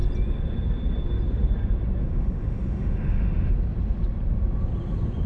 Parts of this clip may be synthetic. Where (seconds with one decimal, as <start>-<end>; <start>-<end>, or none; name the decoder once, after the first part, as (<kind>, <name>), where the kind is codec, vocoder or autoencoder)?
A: 2.0-3.5 (autoencoder, DAC-VAE)